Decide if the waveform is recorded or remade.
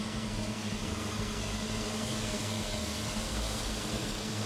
remade